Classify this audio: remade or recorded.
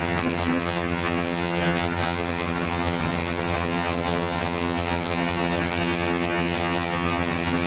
remade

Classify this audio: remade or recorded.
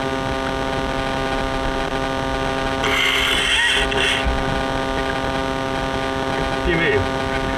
recorded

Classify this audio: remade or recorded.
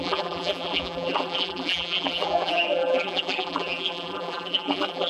remade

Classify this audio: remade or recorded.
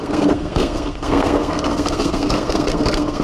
remade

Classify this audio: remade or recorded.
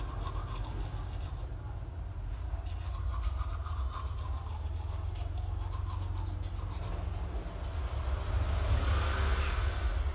recorded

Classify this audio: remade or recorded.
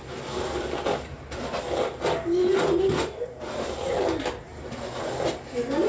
recorded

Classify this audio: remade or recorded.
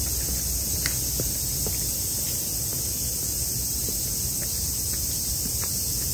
recorded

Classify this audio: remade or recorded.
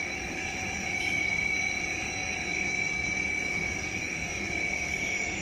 remade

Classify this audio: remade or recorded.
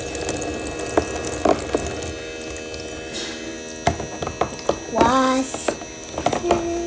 recorded